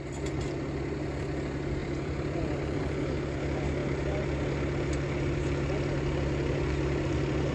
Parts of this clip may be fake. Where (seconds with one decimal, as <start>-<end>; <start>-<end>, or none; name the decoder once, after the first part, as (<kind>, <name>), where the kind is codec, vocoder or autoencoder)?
1.8-2.8 (vocoder, BigVGAN v2)